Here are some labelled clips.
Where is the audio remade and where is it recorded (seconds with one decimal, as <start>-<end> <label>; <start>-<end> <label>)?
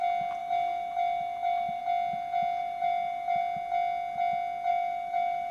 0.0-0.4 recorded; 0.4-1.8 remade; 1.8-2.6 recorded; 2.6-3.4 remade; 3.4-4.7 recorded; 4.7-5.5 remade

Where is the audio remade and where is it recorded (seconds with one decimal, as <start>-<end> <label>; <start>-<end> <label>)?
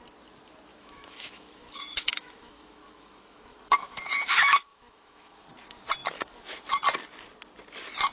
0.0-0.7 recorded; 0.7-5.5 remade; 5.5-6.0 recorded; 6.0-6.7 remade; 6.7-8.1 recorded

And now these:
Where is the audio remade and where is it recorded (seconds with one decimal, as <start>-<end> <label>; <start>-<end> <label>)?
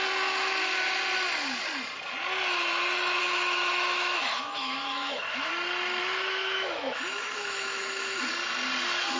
0.0-3.2 recorded; 3.2-5.5 remade; 5.5-6.0 recorded; 6.0-8.2 remade; 8.2-9.2 recorded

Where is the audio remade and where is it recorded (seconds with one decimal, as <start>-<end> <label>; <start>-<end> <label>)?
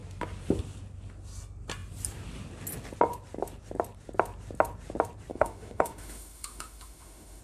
0.0-5.3 recorded; 5.3-7.4 remade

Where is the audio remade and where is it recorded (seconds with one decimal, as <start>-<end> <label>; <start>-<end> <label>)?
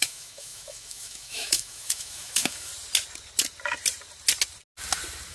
0.0-2.7 remade; 2.7-5.3 recorded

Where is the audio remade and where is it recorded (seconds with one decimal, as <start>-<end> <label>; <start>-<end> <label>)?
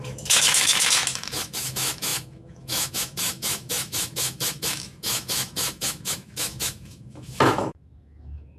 0.0-8.6 remade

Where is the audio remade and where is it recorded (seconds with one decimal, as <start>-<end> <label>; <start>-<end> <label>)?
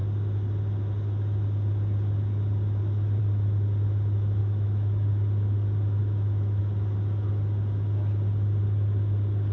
0.0-4.4 recorded; 4.4-5.1 remade; 5.1-6.0 recorded; 6.0-6.6 remade; 6.6-9.5 recorded